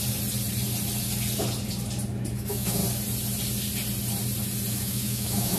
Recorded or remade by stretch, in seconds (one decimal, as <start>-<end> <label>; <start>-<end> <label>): 0.0-2.3 recorded; 2.3-2.8 remade; 2.8-4.7 recorded; 4.7-5.6 remade